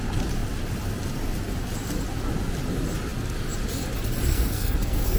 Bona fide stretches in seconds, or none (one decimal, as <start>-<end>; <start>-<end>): 0.0-4.3